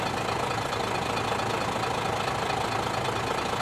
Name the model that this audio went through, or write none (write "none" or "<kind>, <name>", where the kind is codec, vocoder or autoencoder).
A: none